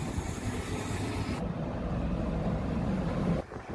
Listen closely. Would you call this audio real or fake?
real